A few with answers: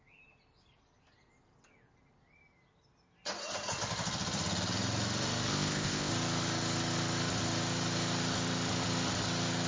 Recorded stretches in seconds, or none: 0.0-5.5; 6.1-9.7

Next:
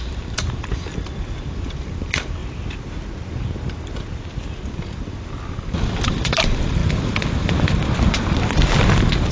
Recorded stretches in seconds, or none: 2.4-4.6; 6.8-9.3

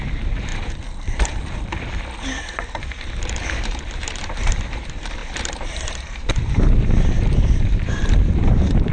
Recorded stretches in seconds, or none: none

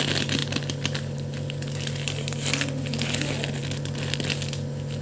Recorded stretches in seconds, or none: 0.0-0.4; 2.9-5.0

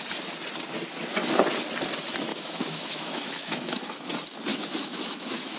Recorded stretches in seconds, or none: 0.0-2.3; 4.1-4.5

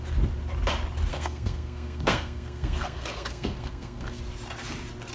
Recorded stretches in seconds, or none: 0.0-1.1; 4.2-5.1

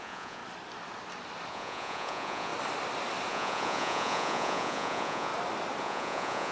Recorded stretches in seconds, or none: 0.4-1.5; 2.5-3.3; 5.3-5.8

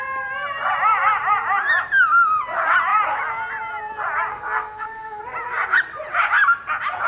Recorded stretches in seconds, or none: 0.0-4.3; 5.2-7.1